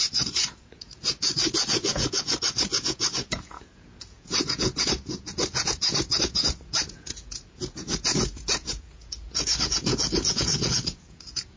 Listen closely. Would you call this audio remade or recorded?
remade